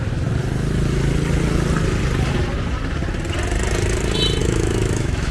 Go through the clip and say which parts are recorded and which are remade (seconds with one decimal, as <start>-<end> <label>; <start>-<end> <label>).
0.0-4.4 recorded; 4.4-5.3 remade